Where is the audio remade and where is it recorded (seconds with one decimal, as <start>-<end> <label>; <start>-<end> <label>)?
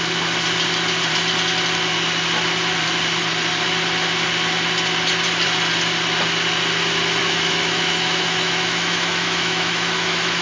0.0-7.2 recorded; 7.2-10.4 remade